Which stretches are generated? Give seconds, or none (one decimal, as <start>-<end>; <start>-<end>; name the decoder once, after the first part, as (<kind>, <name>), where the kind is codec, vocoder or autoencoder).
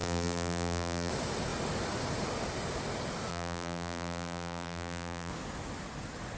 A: 0.0-1.1 (vocoder, BigVGAN v2); 3.3-5.3